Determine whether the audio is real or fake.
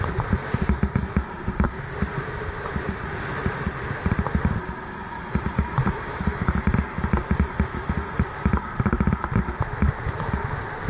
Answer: real